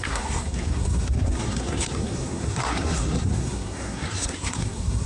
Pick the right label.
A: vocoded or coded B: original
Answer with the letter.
A